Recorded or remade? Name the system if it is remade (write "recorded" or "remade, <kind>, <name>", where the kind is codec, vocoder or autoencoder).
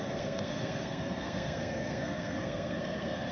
remade, codec, SNAC